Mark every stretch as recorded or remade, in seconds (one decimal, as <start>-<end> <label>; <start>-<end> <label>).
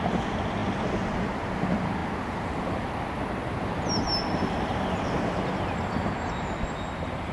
0.0-7.3 recorded